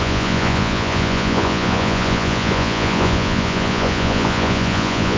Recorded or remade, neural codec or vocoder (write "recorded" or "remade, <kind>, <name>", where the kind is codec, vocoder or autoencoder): remade, vocoder, Vocos